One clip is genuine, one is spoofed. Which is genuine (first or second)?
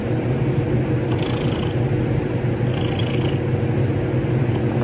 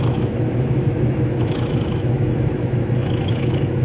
first